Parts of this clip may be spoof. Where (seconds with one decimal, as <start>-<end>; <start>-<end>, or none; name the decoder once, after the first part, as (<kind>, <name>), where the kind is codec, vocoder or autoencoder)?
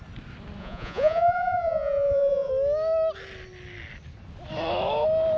0.6-2.5 (vocoder, Vocos)